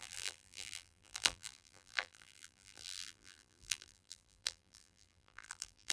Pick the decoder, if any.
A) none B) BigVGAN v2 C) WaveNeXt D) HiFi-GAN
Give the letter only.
B